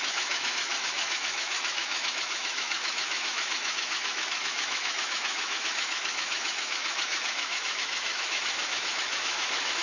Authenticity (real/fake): fake